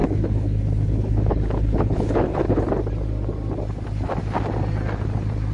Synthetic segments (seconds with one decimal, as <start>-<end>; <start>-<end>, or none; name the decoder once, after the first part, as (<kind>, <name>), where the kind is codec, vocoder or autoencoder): 0.0-2.6 (codec, HILCodec)